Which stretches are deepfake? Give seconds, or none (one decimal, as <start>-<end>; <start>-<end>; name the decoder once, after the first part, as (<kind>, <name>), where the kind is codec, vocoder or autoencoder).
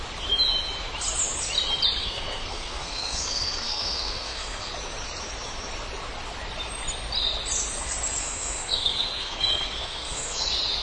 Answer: 2.0-4.7 (codec, SNAC); 8.2-10.4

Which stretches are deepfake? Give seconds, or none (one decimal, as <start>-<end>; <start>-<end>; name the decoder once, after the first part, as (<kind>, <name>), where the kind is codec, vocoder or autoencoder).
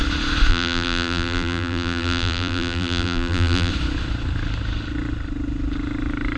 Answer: 0.5-3.7 (vocoder, BigVGAN v2)